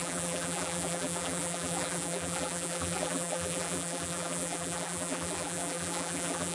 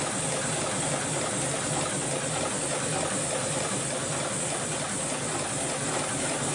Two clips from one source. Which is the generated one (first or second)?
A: first